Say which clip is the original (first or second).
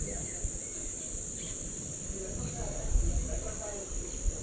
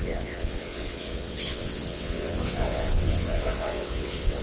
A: first